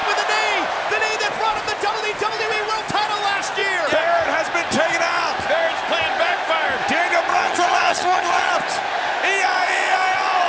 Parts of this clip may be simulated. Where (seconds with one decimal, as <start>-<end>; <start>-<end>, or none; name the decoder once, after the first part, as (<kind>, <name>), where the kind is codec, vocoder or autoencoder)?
7.3-8.5 (vocoder, HiFi-GAN)